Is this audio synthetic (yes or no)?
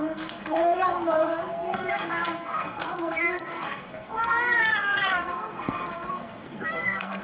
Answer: yes